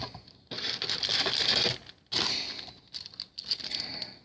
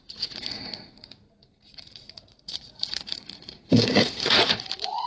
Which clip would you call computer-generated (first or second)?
second